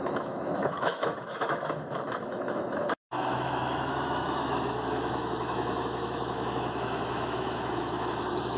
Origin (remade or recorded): remade